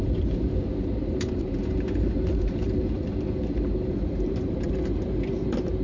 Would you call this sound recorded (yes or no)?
no